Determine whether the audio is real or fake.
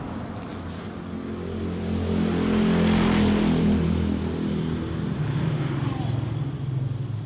real